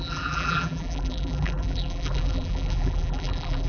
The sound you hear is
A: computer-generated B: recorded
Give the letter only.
A